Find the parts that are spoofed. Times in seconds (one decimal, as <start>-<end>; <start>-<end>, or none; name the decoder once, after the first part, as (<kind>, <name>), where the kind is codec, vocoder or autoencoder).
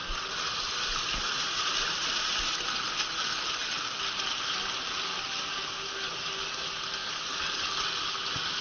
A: 1.2-1.7 (vocoder, Vocos)